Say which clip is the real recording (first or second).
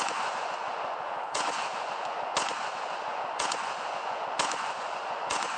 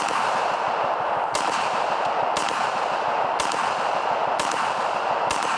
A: second